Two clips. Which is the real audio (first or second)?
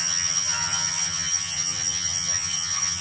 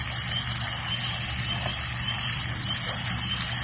second